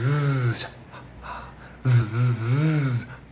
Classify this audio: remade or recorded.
recorded